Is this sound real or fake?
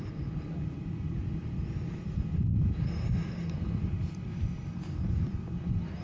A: real